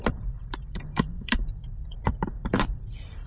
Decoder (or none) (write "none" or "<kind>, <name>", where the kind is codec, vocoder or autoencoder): vocoder, BigVGAN v2